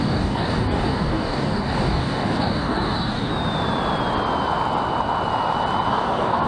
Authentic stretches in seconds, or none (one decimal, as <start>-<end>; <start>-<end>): 3.3-5.9